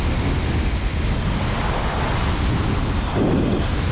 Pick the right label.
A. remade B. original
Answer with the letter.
B